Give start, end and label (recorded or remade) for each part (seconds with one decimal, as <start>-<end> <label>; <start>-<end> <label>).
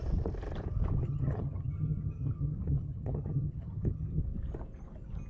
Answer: 0.0-1.0 recorded; 1.0-4.2 remade; 4.2-5.3 recorded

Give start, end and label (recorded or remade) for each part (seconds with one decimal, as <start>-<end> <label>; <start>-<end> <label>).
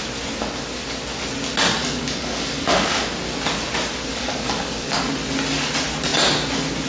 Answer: 0.0-1.8 recorded; 1.8-3.1 remade; 3.1-4.1 recorded; 4.1-5.1 remade; 5.1-6.9 recorded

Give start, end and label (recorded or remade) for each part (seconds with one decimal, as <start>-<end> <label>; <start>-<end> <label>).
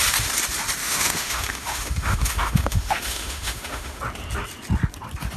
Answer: 0.0-0.8 recorded; 0.8-4.0 remade; 4.0-5.4 recorded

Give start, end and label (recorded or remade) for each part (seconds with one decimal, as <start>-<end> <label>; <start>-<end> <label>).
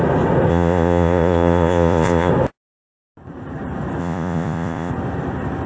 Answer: 0.0-0.5 recorded; 0.5-2.3 remade; 2.3-4.0 recorded; 4.0-4.9 remade; 4.9-5.7 recorded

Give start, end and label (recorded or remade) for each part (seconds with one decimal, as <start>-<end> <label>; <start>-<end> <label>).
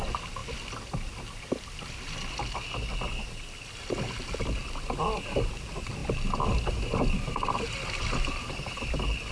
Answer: 0.0-9.3 recorded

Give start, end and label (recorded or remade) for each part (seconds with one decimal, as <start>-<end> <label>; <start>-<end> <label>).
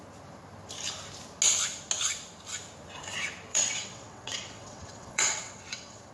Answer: 0.0-3.5 recorded; 3.5-6.1 remade